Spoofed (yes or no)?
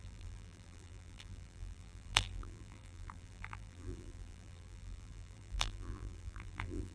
yes